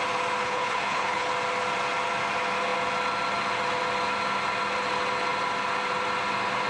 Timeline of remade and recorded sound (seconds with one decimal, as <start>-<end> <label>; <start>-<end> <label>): 0.0-0.4 recorded; 0.4-1.3 remade; 1.3-6.7 recorded